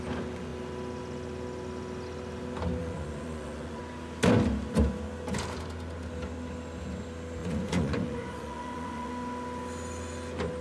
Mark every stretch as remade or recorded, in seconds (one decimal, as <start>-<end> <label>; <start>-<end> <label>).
0.0-2.8 recorded; 2.8-3.8 remade; 3.8-7.4 recorded; 7.4-9.1 remade; 9.1-10.6 recorded